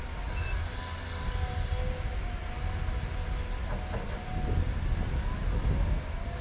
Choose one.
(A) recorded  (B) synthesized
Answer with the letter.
A